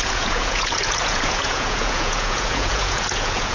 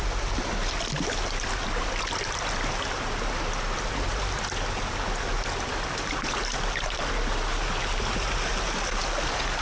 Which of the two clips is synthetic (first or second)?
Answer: first